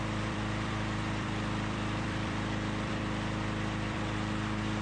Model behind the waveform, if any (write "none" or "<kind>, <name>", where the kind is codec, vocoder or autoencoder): vocoder, BigVGAN v2